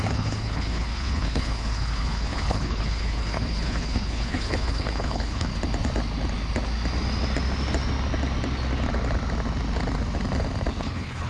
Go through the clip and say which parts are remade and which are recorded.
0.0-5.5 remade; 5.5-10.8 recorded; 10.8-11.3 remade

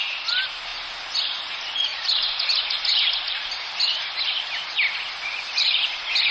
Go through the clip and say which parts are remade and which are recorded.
0.0-1.9 recorded; 1.9-3.7 remade; 3.7-6.3 recorded

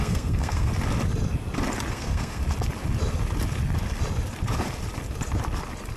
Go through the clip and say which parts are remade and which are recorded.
0.0-0.7 remade; 0.7-1.9 recorded; 1.9-2.4 remade; 2.4-6.0 recorded

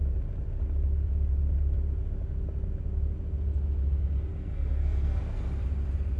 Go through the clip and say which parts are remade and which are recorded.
0.0-4.3 recorded; 4.3-5.2 remade; 5.2-6.2 recorded

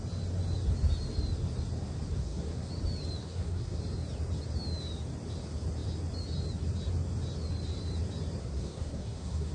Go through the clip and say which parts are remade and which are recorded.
0.0-2.2 recorded; 2.2-2.7 remade; 2.7-3.2 recorded; 3.2-3.8 remade; 3.8-8.4 recorded; 8.4-9.5 remade

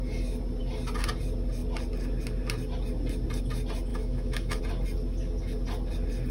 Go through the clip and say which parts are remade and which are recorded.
0.0-3.9 recorded; 3.9-4.6 remade; 4.6-6.3 recorded

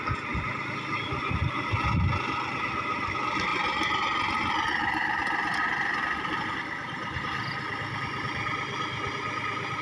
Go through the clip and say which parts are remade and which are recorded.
0.0-9.8 recorded

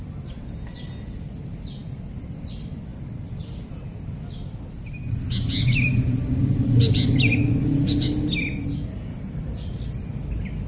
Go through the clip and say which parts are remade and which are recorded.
0.0-10.7 recorded